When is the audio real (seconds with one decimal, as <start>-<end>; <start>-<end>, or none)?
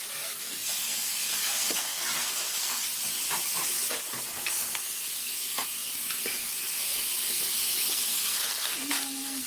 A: 2.9-4.2